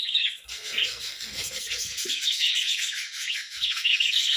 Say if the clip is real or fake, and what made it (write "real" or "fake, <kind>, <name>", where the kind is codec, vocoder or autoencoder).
fake, codec, SNAC